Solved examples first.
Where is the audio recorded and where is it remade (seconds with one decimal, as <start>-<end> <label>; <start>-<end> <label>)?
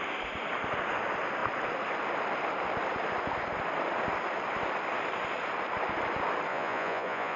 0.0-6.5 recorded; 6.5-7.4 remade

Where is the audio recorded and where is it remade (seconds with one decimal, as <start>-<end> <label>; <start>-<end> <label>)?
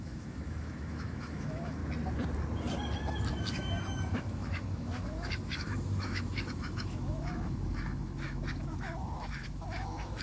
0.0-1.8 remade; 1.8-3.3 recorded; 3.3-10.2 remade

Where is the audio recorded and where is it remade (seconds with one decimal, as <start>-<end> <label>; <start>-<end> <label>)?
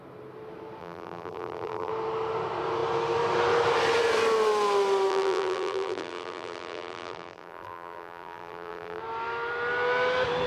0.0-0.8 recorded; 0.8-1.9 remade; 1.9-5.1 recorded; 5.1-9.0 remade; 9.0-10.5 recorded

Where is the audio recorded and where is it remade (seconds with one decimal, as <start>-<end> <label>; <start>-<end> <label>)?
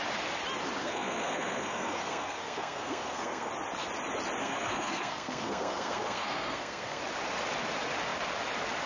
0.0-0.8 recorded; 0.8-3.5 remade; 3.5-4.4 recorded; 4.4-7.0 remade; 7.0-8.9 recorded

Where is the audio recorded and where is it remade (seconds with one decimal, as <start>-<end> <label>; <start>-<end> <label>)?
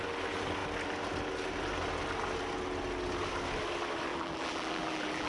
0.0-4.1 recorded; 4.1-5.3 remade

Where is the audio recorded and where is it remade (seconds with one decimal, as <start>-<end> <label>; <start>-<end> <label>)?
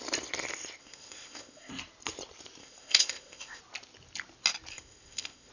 0.0-0.8 recorded; 0.8-1.7 remade; 1.7-2.6 recorded; 2.6-3.6 remade; 3.6-4.7 recorded; 4.7-5.5 remade